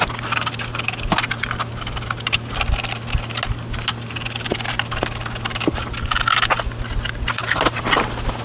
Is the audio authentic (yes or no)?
yes